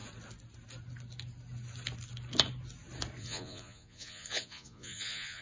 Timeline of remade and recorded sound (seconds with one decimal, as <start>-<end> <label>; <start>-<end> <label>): 0.0-3.2 recorded; 3.2-5.4 remade